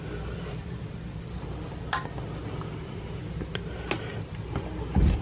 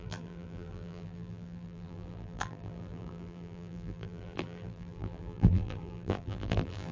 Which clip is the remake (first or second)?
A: second